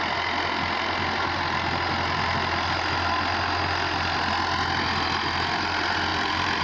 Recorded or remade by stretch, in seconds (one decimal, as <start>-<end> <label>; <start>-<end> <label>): 0.0-6.1 recorded; 6.1-6.6 remade